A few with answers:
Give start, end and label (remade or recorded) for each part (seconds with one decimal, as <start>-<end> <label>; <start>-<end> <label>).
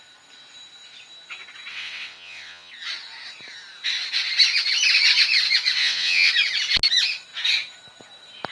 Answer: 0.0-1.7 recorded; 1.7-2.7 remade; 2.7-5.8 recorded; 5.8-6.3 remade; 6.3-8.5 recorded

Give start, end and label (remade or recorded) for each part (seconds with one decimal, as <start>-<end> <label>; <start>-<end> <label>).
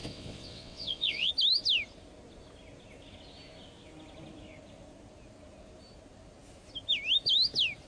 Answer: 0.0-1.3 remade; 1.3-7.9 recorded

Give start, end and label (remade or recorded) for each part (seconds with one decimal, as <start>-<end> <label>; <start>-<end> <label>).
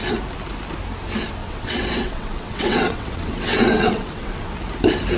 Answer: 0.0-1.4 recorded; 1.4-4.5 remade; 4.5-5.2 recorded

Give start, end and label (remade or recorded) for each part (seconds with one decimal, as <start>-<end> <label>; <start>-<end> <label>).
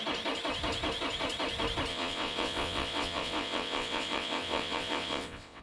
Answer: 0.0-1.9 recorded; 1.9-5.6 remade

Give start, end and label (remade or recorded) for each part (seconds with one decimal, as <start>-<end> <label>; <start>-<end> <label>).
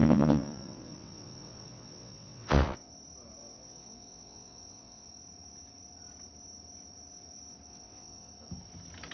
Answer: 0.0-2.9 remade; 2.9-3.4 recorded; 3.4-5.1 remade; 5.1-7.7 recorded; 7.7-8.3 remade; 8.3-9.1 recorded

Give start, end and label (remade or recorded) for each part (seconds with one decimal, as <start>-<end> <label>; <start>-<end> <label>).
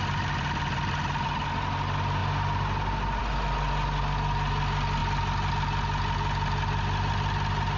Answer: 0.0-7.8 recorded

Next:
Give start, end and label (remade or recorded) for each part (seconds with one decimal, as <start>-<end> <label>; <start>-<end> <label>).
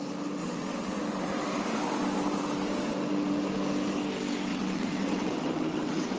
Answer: 0.0-0.4 recorded; 0.4-1.0 remade; 1.0-4.5 recorded; 4.5-6.2 remade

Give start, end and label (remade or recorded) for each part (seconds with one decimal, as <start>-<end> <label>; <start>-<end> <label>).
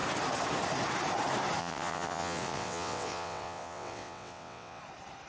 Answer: 0.0-1.6 recorded; 1.6-4.8 remade; 4.8-5.3 recorded